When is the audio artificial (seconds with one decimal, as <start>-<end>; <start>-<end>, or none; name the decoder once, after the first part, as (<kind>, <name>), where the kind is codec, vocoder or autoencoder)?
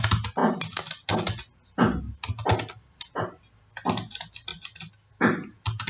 none